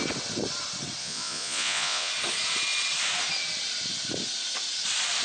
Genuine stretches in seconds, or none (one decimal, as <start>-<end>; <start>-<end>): 0.0-1.0; 2.1-5.2